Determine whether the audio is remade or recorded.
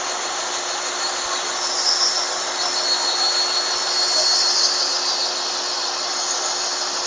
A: recorded